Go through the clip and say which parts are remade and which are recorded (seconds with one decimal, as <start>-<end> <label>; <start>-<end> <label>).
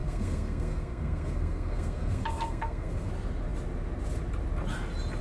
0.0-3.1 remade; 3.1-5.2 recorded